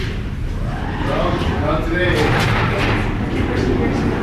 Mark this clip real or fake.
real